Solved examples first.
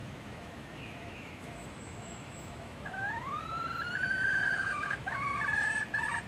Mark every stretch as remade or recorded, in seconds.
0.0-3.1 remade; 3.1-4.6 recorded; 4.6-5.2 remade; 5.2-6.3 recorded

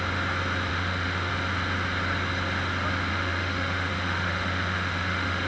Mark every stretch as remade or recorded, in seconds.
0.0-0.7 recorded; 0.7-1.3 remade; 1.3-3.1 recorded; 3.1-5.5 remade

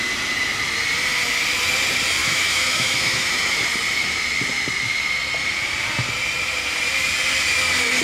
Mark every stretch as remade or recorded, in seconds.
0.0-2.2 recorded; 2.2-3.6 remade; 3.6-8.0 recorded

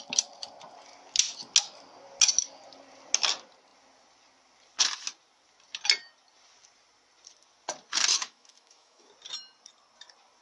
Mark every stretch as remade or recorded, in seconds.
0.0-8.1 recorded; 8.1-9.1 remade; 9.1-10.4 recorded